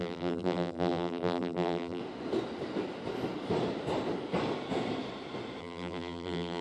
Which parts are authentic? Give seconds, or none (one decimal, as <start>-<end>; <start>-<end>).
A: 2.0-5.6